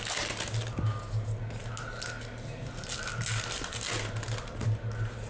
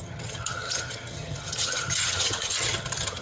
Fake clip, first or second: second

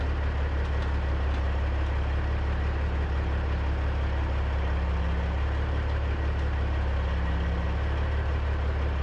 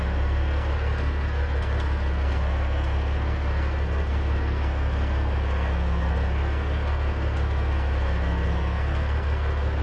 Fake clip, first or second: second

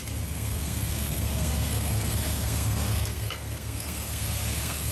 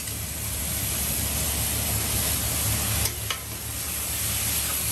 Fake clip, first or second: first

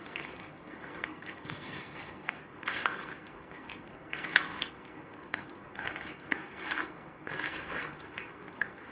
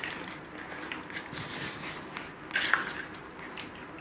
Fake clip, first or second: first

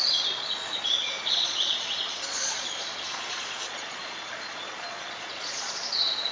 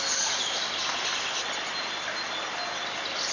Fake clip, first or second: first